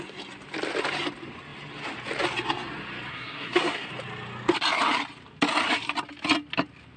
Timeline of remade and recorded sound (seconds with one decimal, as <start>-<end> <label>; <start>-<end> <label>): 0.0-3.1 recorded; 3.1-3.9 remade; 3.9-7.0 recorded